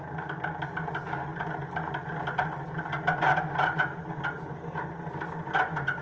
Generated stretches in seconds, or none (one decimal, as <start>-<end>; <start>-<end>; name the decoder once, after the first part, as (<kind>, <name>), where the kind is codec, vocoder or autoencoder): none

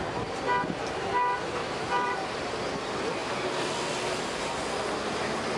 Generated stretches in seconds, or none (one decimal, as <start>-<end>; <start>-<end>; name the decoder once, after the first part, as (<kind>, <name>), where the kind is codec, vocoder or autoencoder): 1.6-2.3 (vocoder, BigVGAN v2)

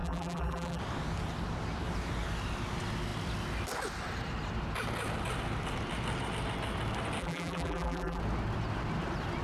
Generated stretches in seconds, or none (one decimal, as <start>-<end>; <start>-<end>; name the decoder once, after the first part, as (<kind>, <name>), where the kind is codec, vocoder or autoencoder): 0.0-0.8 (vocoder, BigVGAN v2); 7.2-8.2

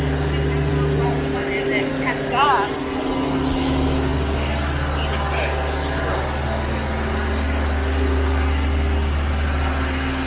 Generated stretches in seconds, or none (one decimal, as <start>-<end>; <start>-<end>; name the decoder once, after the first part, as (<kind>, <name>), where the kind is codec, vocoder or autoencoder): none

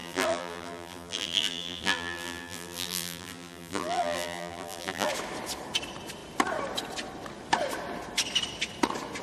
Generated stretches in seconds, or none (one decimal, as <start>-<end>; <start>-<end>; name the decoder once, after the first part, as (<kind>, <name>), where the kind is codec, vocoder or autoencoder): 0.0-5.1 (vocoder, BigVGAN v2)